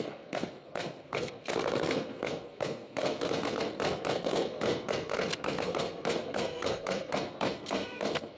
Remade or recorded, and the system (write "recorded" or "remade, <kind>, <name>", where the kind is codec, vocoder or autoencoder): remade, codec, SNAC